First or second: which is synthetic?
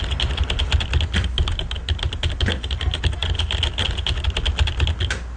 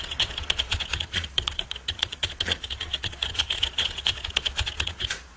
second